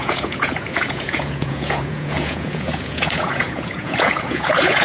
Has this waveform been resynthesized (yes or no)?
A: yes